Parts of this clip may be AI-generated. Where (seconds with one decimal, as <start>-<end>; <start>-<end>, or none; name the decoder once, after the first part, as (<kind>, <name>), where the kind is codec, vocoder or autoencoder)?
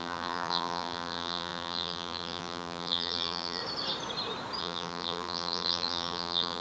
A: 0.0-3.6 (vocoder, BigVGAN v2); 4.6-6.6